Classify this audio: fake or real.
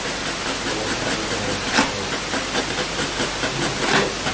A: real